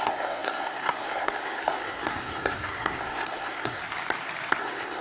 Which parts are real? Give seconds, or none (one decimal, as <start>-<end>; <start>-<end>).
3.8-4.6